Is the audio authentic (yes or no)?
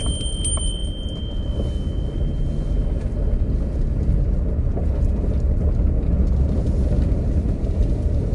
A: yes